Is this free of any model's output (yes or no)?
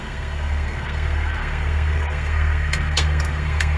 no